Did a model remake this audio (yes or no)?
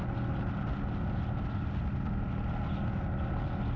no